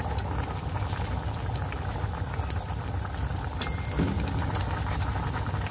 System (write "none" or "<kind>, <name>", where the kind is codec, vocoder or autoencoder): none